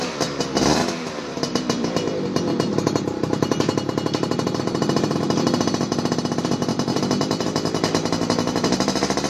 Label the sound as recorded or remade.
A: remade